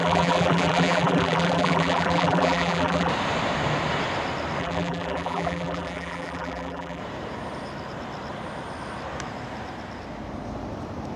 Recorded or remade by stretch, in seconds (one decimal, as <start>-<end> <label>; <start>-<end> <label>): 0.0-3.1 remade; 3.1-4.6 recorded; 4.6-7.0 remade; 7.0-11.2 recorded